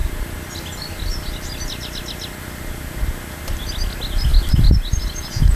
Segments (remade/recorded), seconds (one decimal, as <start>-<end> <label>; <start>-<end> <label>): 0.0-5.6 recorded